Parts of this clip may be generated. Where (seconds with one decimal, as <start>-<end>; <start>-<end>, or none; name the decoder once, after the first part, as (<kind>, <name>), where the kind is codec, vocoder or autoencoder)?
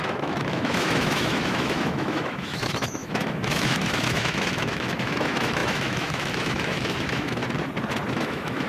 0.0-7.4 (autoencoder, DAC-VAE); 8.1-8.7